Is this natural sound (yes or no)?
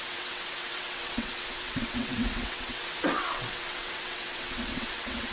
no